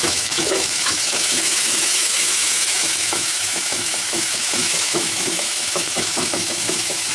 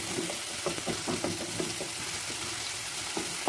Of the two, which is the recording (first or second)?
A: second